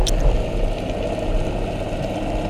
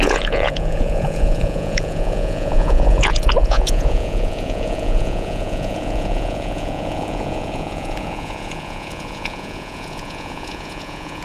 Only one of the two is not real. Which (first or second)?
second